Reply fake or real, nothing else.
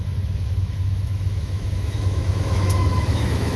fake